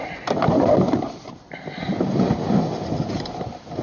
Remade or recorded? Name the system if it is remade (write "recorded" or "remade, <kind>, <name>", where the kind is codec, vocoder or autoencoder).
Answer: recorded